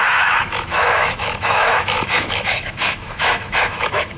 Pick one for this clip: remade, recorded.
remade